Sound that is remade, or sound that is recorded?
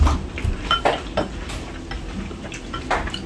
recorded